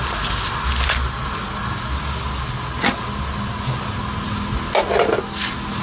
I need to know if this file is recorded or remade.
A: recorded